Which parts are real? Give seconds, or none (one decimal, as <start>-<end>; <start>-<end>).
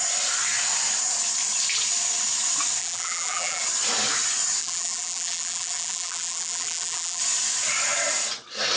0.0-2.8; 3.6-4.6; 7.2-8.8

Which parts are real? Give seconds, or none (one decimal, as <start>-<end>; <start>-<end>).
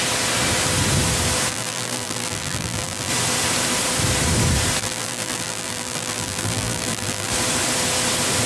0.0-1.5; 3.1-4.8; 7.3-8.5